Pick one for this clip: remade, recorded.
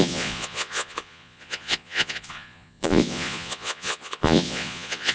remade